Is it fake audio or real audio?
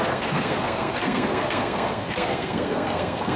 fake